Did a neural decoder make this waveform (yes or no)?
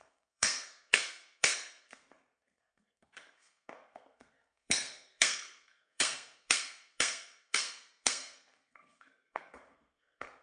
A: yes